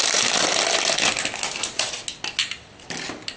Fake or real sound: real